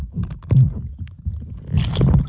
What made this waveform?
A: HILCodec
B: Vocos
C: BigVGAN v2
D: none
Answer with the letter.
D